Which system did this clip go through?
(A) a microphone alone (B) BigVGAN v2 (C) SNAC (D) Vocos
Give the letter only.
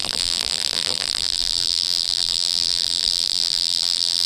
B